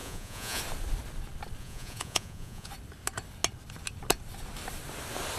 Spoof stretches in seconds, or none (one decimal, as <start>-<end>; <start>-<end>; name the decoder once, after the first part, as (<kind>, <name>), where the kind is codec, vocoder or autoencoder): 0.0-0.6 (vocoder, Vocos); 1.6-2.7